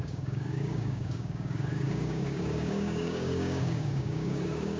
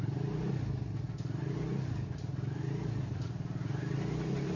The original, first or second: second